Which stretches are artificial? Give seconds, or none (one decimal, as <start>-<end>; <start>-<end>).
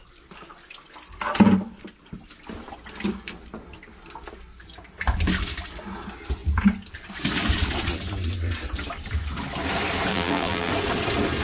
10.1-10.7